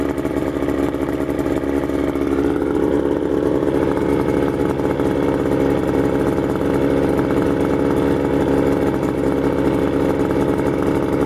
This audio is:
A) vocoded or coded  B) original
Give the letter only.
B